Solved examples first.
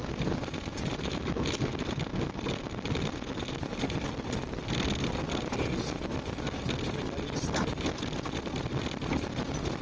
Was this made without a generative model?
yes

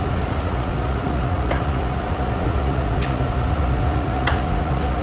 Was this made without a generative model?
no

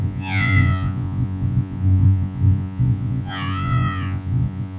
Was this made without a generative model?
no